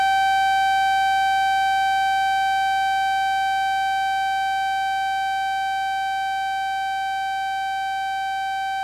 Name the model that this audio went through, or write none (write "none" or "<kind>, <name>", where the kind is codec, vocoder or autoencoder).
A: none